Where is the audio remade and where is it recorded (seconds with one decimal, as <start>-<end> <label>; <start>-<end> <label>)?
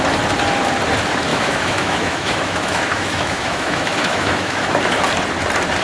0.0-1.3 recorded; 1.3-4.8 remade; 4.8-5.8 recorded